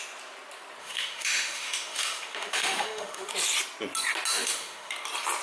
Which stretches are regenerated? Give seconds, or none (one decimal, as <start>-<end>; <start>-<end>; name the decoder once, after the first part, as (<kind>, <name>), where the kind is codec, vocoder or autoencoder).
0.8-3.3 (autoencoder, DAC-VAE); 4.3-4.9